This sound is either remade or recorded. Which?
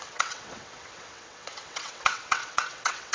remade